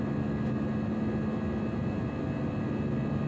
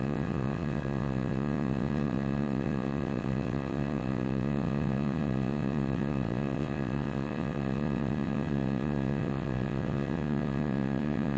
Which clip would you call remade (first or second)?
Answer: second